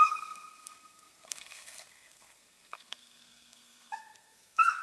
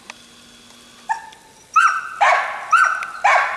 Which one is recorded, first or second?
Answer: second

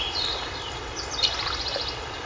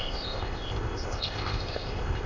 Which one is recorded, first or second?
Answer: first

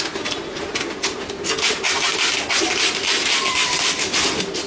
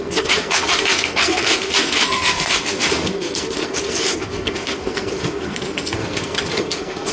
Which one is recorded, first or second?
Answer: first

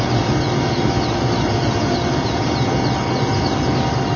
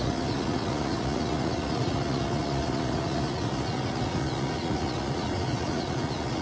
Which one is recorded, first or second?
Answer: first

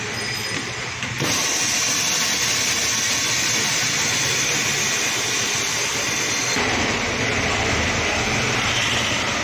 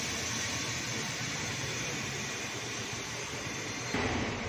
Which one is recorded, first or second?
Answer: first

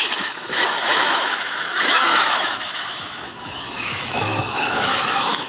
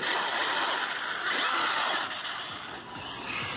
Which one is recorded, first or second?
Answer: second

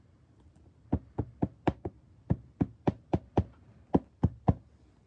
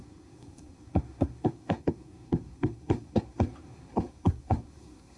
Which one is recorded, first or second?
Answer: first